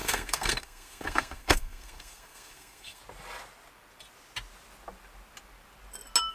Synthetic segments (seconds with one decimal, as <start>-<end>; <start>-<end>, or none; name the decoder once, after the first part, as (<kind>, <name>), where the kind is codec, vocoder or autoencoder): 0.0-3.0 (codec, SNAC)